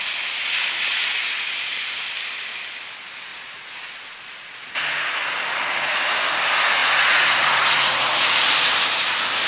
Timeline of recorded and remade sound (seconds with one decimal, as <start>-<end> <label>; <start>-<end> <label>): 0.0-0.9 recorded; 0.9-1.5 remade; 1.5-3.3 recorded; 3.3-4.8 remade; 4.8-6.8 recorded; 6.8-8.4 remade; 8.4-9.5 recorded